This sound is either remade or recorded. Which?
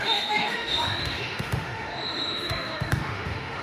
remade